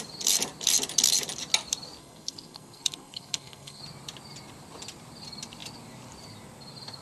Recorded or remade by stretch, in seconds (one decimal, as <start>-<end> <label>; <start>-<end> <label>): 0.0-2.0 recorded; 2.0-3.8 remade; 3.8-7.0 recorded